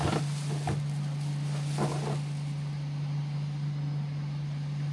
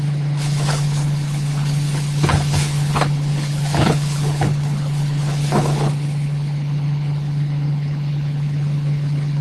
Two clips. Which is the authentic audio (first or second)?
first